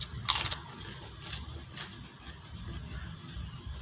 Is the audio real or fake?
real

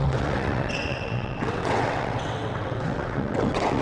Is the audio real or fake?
fake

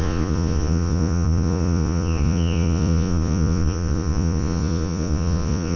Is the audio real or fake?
fake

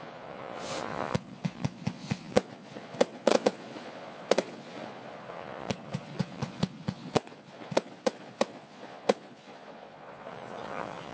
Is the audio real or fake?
fake